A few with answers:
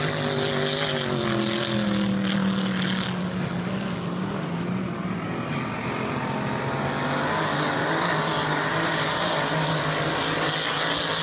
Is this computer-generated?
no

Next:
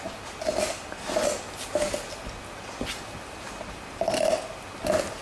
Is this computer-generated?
no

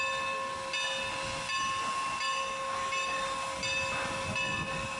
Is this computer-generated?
no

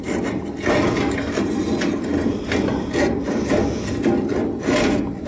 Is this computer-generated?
no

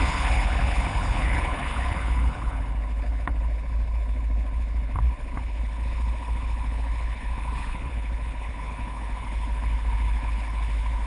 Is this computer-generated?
yes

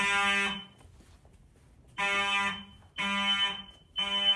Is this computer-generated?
no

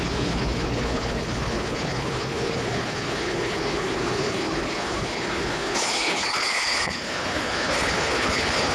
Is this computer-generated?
yes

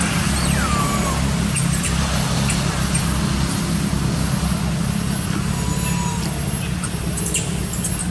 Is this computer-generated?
no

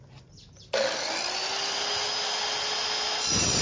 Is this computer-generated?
no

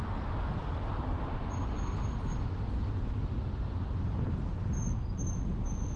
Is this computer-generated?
no